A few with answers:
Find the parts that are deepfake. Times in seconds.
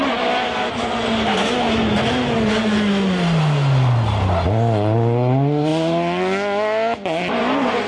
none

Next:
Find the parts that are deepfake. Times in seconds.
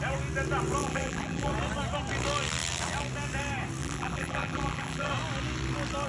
0.8-1.5 (vocoder, BigVGAN v2); 3.8-5.1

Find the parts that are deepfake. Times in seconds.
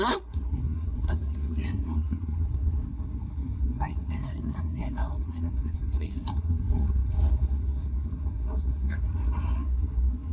0.0-10.3 (codec, SNAC)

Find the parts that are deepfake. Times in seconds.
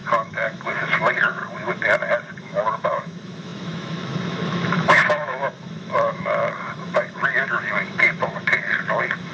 0.0-1.4 (autoencoder, DAC-VAE); 2.4-9.3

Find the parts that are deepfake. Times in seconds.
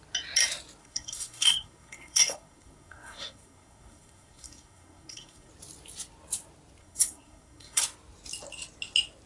0.8-5.5 (codec, SNAC); 6.8-7.8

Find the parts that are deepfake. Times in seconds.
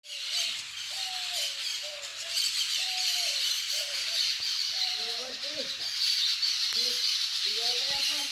2.1-5.8 (vocoder, BigVGAN v2); 7.3-8.3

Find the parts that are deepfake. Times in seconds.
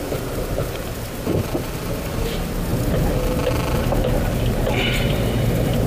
none